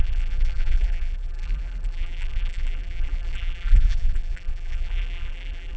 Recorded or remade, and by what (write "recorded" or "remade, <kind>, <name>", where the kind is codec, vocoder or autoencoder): remade, vocoder, BigVGAN v2